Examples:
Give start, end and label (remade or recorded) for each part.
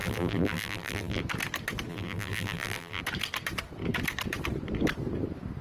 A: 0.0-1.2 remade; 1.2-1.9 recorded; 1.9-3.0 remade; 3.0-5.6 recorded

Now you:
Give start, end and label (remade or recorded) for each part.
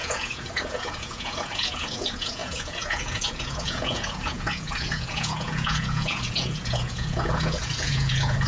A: 0.0-8.5 remade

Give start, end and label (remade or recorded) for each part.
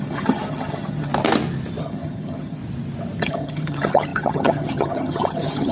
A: 0.0-1.1 remade; 1.1-1.8 recorded; 1.8-2.6 remade; 2.6-3.2 recorded; 3.2-5.7 remade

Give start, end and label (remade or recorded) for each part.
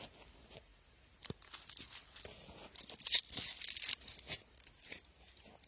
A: 0.0-5.7 recorded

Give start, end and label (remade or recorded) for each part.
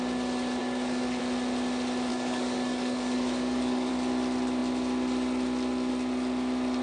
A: 0.0-0.6 recorded; 0.6-1.2 remade; 1.2-2.1 recorded; 2.1-3.9 remade; 3.9-6.8 recorded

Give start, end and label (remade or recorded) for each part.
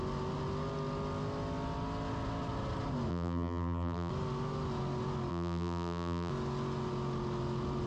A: 0.0-3.1 recorded; 3.1-4.1 remade; 4.1-5.3 recorded; 5.3-6.3 remade; 6.3-7.9 recorded